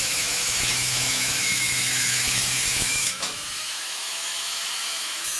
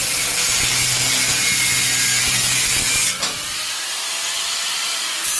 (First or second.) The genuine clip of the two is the second